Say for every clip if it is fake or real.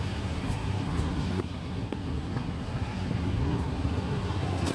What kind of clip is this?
fake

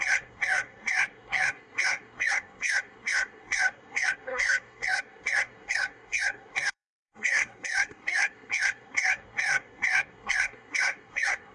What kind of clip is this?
fake